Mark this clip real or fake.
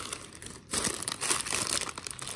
real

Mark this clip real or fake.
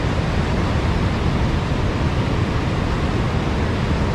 real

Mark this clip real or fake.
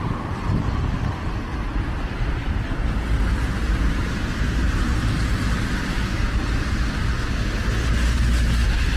real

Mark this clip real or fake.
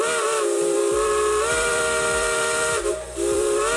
fake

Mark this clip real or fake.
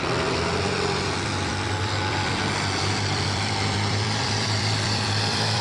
fake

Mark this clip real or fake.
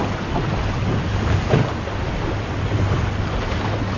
real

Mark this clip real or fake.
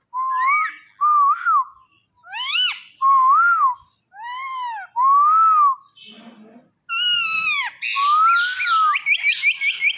real